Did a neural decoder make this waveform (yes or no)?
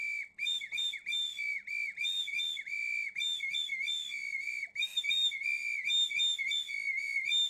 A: no